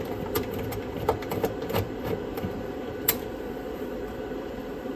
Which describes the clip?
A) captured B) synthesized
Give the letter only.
B